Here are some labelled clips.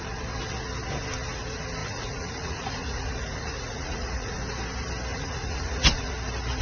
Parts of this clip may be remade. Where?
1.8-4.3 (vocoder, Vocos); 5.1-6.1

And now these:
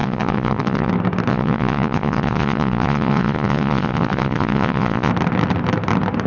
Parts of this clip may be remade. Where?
0.0-0.9 (vocoder, Vocos); 1.3-5.1

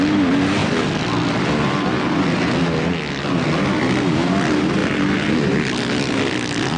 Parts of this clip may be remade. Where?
none

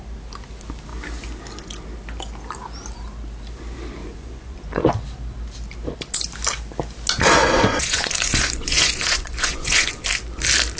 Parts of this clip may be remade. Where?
4.0-4.9 (vocoder, Vocos); 7.4-9.9

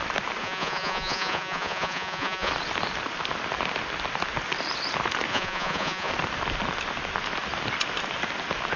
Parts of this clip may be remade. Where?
0.4-2.5 (vocoder, Vocos); 5.3-6.1

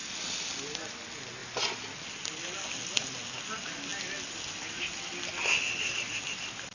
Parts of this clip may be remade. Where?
none